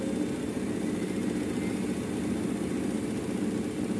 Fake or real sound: real